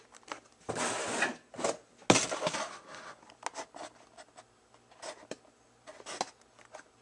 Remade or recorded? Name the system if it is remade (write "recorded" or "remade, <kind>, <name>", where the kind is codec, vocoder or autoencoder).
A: recorded